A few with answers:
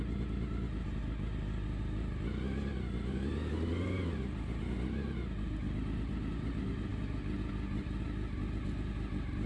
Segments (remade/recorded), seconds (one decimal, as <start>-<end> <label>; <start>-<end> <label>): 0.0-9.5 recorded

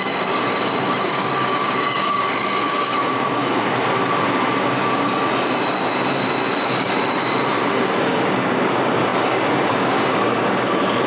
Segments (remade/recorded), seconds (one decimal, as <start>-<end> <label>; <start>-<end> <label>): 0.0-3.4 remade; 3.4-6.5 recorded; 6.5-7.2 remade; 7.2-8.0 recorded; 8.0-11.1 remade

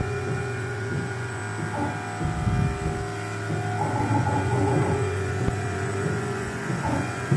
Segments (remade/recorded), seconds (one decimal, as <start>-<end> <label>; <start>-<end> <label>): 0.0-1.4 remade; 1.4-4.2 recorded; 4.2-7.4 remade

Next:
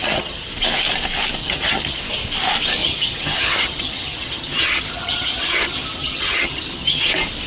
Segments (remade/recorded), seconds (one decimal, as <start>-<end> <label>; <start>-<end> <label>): 0.0-0.5 remade; 0.5-1.4 recorded; 1.4-2.0 remade; 2.0-2.8 recorded; 2.8-7.1 remade; 7.1-7.5 recorded

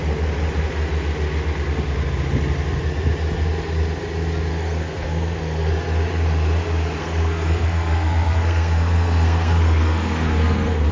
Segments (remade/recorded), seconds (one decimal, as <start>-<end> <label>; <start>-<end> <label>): 0.0-4.5 recorded; 4.5-5.7 remade; 5.7-7.0 recorded; 7.0-10.9 remade